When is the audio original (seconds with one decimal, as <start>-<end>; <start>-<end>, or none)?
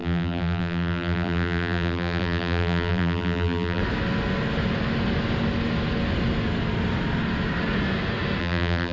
3.8-8.4